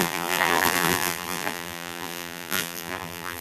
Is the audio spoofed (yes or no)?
yes